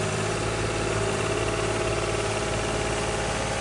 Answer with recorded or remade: remade